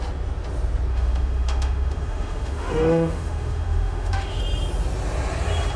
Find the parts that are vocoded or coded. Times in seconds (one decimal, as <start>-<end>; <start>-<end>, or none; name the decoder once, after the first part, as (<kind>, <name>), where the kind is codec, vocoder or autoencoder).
0.9-4.4 (autoencoder, DAC-VAE)